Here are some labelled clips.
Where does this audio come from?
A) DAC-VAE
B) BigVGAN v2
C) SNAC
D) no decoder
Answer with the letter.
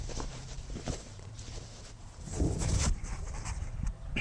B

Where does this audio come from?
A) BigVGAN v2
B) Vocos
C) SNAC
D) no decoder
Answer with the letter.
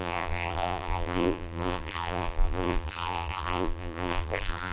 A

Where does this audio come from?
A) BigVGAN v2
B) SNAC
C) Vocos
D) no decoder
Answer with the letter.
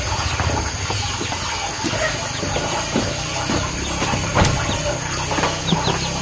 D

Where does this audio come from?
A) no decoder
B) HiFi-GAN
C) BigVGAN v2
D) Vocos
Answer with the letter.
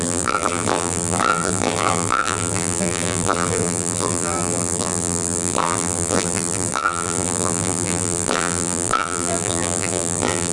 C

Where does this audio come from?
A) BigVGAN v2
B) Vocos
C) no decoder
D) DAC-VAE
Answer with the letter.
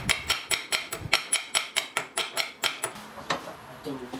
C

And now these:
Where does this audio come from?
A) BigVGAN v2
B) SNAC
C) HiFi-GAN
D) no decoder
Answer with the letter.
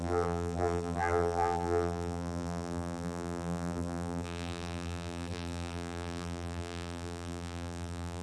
A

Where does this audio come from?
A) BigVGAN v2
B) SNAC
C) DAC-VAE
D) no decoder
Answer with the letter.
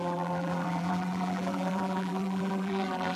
A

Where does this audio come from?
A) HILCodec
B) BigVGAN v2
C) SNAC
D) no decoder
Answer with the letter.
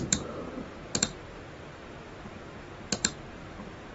B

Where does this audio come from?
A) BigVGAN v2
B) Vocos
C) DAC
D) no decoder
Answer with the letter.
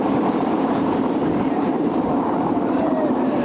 A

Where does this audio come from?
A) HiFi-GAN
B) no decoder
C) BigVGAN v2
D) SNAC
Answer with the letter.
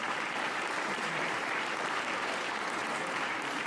C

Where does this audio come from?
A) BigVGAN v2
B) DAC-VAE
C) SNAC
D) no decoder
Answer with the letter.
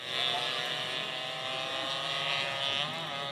D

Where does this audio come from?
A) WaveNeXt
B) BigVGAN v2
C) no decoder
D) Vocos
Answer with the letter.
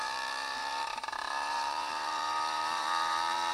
B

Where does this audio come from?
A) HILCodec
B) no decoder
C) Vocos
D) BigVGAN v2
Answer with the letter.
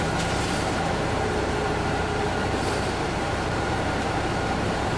D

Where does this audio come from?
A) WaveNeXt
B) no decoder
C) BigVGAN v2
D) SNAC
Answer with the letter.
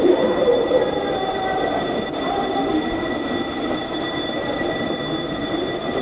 C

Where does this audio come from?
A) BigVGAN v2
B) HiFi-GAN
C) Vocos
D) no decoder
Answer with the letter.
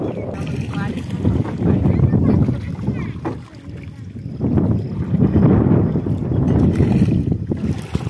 D